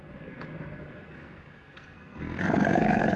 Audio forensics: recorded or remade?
remade